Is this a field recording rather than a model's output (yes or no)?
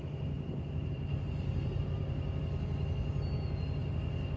yes